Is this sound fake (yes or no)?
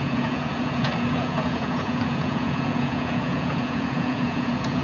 yes